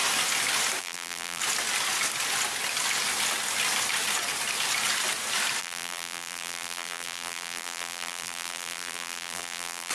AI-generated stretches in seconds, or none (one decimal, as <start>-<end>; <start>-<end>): 0.8-1.4; 5.6-9.9